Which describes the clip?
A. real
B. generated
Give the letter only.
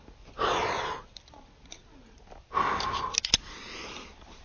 A